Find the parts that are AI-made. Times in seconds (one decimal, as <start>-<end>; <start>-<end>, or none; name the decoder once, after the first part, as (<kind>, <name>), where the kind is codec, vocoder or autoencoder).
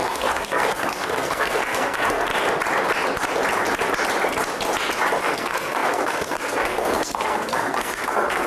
0.0-2.3 (codec, SNAC); 5.2-8.5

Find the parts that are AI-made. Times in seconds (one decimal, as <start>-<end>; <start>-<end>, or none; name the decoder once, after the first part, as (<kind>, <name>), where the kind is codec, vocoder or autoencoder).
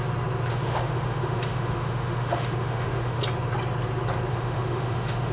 0.5-3.2 (autoencoder, DAC-VAE); 4.3-5.3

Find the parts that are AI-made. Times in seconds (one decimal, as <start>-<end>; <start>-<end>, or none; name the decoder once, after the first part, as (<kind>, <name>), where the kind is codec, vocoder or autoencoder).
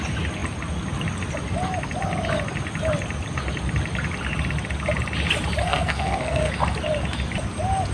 5.6-6.5 (codec, SNAC)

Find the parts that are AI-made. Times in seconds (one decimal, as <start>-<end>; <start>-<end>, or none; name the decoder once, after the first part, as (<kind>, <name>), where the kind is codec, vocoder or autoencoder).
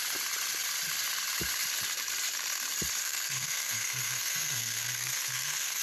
3.0-5.8 (codec, SNAC)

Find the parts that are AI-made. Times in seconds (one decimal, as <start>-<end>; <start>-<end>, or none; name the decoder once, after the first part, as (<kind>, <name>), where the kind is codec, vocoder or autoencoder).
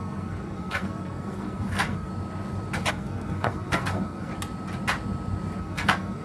0.0-2.1 (codec, SNAC); 2.9-4.3; 5.6-6.2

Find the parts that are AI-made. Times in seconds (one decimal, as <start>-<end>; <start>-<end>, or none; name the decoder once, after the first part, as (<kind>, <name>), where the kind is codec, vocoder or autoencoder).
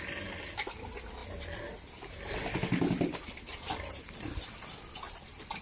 none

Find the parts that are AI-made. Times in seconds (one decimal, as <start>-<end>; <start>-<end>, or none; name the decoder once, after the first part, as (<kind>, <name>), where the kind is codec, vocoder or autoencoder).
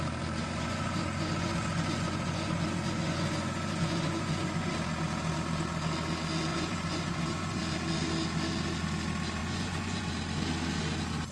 0.4-4.7 (vocoder, Vocos); 6.5-7.6; 9.4-10.1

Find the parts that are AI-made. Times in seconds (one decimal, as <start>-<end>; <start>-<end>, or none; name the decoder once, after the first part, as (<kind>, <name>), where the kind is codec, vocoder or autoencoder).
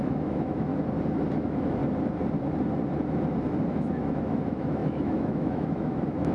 0.0-0.7 (autoencoder, DAC-VAE); 1.3-1.8; 3.7-6.3